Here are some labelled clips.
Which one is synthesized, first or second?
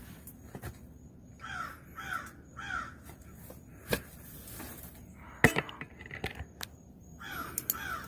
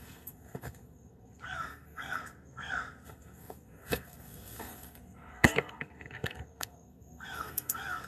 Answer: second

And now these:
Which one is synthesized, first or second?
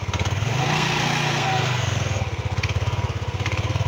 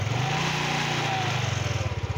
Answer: first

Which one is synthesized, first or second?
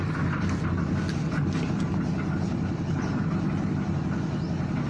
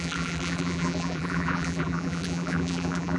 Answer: second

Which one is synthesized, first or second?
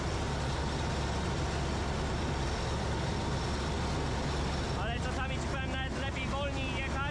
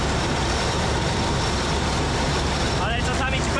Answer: second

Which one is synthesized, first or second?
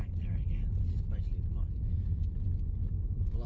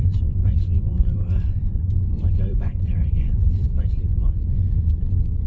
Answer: second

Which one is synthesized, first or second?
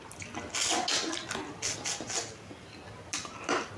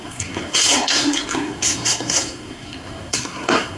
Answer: second